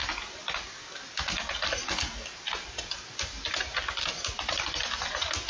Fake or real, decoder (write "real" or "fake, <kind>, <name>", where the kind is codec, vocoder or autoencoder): real